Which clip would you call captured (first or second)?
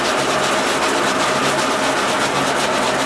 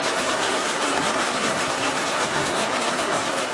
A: first